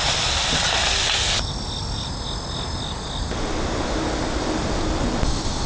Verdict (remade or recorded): recorded